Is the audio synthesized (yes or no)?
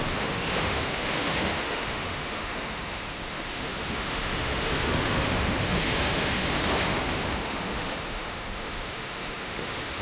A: yes